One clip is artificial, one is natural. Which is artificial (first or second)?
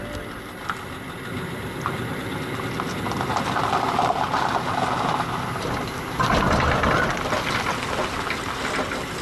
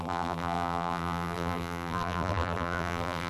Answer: second